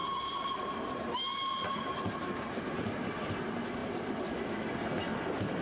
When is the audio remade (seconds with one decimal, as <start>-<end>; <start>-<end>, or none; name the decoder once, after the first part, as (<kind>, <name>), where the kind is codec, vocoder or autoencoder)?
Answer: 0.0-1.8 (vocoder, BigVGAN v2); 3.8-4.9